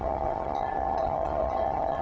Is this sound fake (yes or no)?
yes